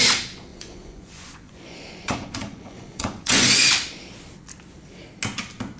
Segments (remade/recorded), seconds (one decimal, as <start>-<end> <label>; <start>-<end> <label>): 0.0-0.5 recorded; 0.5-3.7 remade; 3.7-5.8 recorded

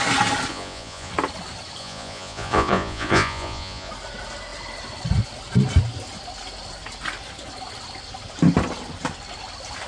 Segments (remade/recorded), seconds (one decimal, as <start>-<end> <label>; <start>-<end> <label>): 0.0-0.5 recorded; 0.5-1.1 remade; 1.1-1.8 recorded; 1.8-3.9 remade; 3.9-9.9 recorded

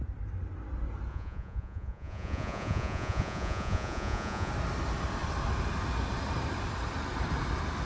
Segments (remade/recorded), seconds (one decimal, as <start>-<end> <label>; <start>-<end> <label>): 0.0-1.1 recorded; 1.1-4.5 remade; 4.5-7.9 recorded

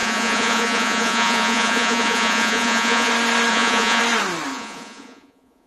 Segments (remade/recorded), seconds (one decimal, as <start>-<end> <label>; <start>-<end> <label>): 0.0-3.1 remade; 3.1-3.5 recorded; 3.5-4.0 remade; 4.0-4.5 recorded; 4.5-5.7 remade

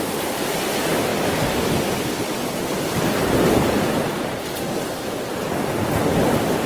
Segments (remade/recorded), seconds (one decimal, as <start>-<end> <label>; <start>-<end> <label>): 0.0-6.7 recorded